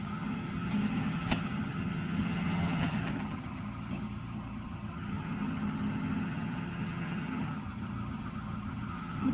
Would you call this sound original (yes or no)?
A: no